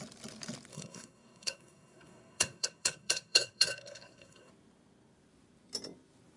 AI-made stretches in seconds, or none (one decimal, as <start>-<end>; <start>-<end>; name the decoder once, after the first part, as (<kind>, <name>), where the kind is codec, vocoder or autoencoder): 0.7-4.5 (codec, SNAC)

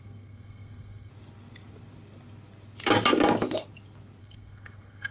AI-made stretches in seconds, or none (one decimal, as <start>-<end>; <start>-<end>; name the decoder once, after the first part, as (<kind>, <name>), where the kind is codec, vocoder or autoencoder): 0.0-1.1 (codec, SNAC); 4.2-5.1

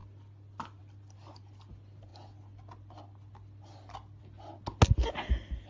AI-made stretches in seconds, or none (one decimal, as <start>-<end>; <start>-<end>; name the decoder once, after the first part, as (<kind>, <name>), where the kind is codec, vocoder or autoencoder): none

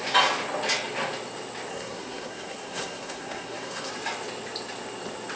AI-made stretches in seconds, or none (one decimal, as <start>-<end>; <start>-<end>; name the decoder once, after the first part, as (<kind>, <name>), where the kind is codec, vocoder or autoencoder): 1.7-3.9 (codec, SNAC)

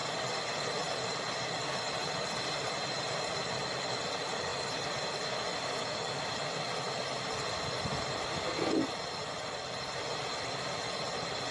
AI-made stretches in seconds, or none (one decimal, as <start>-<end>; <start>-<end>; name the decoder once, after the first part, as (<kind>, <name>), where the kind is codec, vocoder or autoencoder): none

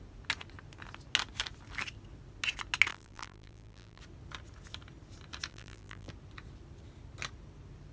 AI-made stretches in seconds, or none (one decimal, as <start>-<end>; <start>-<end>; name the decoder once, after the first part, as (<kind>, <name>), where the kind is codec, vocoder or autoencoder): 2.9-4.0 (vocoder, BigVGAN v2); 5.5-6.1

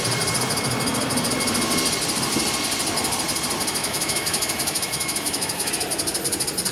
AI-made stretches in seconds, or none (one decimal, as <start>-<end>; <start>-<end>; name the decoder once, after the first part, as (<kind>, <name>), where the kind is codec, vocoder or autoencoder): 3.8-5.7 (autoencoder, DAC-VAE)